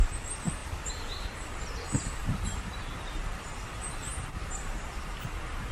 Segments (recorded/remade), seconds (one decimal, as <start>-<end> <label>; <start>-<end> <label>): 0.0-2.2 recorded; 2.2-2.9 remade; 2.9-4.1 recorded; 4.1-5.7 remade

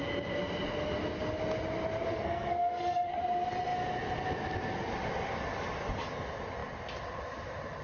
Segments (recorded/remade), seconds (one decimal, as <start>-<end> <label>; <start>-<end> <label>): 0.0-2.1 recorded; 2.1-3.2 remade; 3.2-7.8 recorded

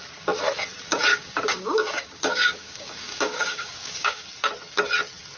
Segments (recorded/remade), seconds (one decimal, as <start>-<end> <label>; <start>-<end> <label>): 0.0-1.1 recorded; 1.1-4.3 remade; 4.3-5.4 recorded

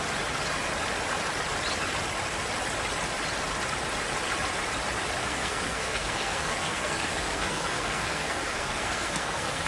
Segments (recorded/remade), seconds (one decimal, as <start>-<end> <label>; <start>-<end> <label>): 0.0-5.2 recorded; 5.2-9.7 remade

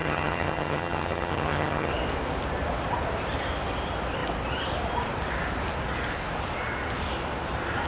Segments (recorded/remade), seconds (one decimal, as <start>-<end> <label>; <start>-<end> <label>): 0.0-1.9 remade; 1.9-7.9 recorded

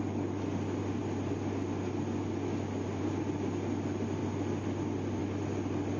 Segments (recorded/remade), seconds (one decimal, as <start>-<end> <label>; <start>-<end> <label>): 0.0-6.0 recorded

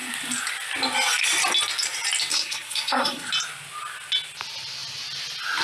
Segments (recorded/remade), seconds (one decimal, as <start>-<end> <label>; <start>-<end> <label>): 0.0-2.3 recorded; 2.3-3.3 remade; 3.3-5.6 recorded